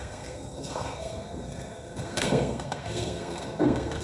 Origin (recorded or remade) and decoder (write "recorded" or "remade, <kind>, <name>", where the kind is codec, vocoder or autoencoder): remade, codec, SNAC